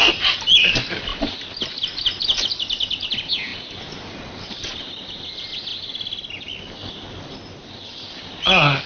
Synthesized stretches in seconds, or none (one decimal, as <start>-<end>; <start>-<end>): none